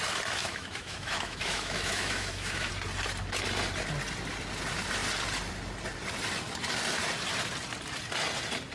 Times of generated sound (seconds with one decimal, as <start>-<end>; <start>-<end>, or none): 0.4-2.7